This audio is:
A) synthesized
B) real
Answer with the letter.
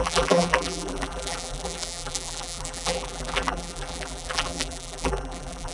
A